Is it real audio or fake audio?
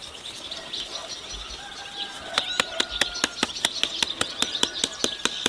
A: real